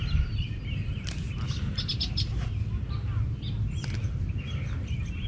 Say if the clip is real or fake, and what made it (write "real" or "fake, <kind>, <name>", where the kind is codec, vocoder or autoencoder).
real